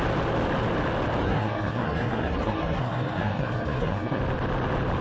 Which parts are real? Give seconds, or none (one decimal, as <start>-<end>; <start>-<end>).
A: 0.0-1.2; 4.2-5.0

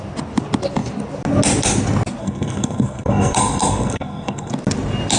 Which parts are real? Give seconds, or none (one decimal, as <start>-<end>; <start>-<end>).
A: 0.0-2.2; 4.5-5.2

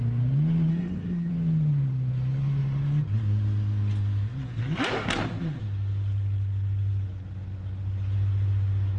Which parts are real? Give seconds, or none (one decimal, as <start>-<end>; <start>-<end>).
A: 0.0-0.7; 1.3-9.0